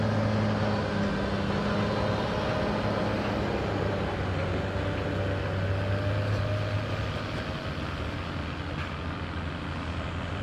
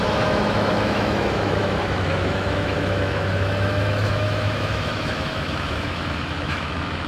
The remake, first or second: second